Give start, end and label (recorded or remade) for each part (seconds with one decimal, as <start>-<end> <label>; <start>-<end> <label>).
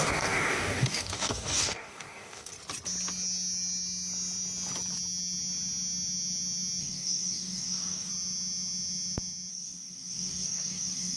0.0-2.5 remade; 2.5-6.8 recorded; 6.8-8.1 remade; 8.1-9.5 recorded; 9.5-11.2 remade